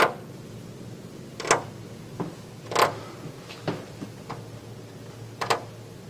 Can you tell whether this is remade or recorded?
recorded